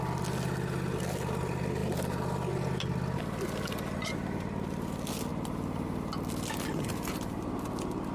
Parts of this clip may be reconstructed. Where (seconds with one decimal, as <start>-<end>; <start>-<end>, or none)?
none